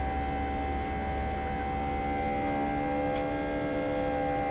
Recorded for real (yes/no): yes